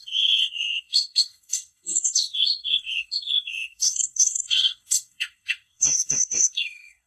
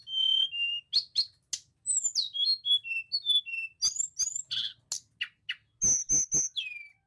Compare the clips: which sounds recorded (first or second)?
second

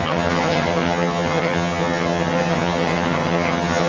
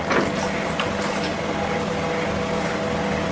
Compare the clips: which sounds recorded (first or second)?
second